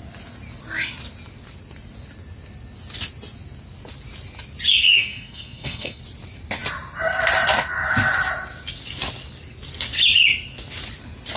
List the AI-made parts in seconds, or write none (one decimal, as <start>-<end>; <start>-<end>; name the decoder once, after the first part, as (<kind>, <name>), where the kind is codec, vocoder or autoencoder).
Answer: 4.7-6.0 (codec, SNAC)